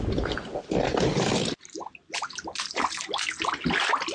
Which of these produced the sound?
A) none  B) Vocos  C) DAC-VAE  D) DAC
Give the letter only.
A